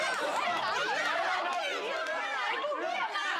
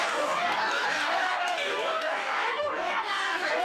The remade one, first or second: second